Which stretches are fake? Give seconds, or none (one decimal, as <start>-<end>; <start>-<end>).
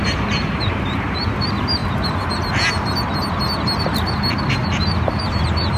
0.0-1.8; 5.3-5.8